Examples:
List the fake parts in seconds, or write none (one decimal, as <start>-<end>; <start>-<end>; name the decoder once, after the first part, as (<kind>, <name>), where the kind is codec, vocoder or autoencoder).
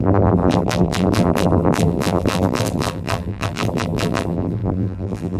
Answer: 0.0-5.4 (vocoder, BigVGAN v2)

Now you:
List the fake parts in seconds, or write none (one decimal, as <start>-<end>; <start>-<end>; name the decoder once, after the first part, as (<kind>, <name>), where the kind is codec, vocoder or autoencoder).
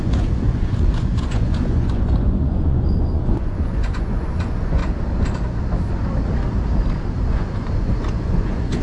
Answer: 0.0-4.8 (vocoder, Vocos); 7.3-8.8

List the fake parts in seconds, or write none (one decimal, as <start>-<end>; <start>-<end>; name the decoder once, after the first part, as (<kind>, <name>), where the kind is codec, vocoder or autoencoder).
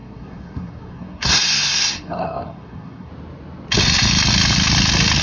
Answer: 0.0-3.1 (codec, SNAC)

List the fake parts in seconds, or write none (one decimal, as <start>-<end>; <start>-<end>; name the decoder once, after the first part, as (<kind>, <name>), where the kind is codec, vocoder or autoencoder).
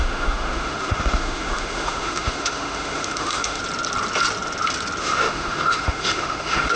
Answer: 0.0-3.6 (autoencoder, DAC-VAE); 5.0-6.8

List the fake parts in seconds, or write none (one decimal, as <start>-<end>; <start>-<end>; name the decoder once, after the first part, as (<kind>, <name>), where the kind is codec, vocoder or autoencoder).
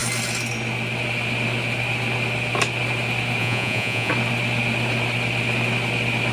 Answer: 3.4-4.1 (vocoder, Vocos)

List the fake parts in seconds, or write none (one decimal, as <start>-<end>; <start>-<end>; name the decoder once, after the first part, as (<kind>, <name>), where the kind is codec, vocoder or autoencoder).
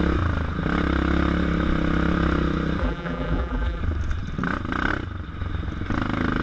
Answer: 2.8-3.8 (vocoder, BigVGAN v2)